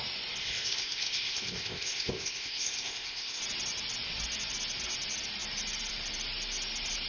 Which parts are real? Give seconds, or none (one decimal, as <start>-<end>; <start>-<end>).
0.0-0.4; 3.4-7.1